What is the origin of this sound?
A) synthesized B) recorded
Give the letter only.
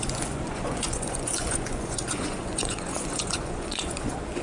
A